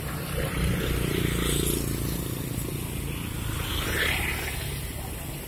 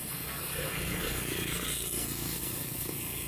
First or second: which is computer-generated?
second